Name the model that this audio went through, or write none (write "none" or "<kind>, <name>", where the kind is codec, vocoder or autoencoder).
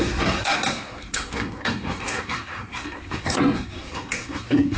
codec, SNAC